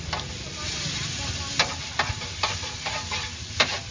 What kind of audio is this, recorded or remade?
recorded